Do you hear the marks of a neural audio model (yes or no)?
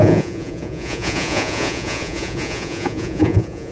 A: yes